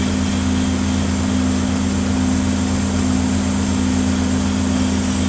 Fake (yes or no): no